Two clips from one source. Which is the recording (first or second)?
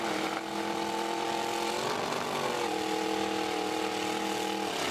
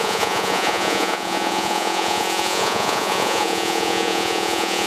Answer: first